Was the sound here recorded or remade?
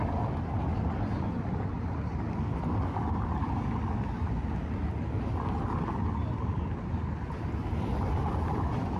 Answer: recorded